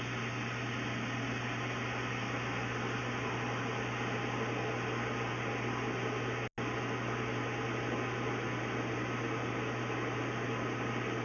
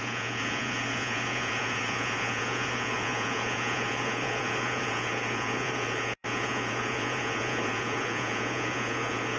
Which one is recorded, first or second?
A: first